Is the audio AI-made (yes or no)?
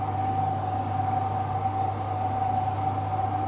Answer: no